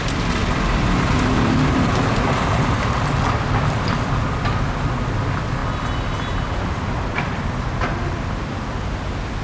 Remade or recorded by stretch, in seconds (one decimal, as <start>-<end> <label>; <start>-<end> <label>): 0.0-9.4 recorded